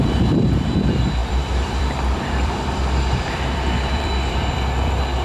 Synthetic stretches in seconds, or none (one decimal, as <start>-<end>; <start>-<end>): 0.0-5.2